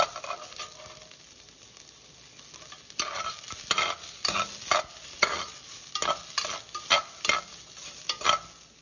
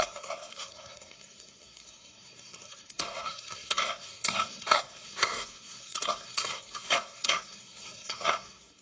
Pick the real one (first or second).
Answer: first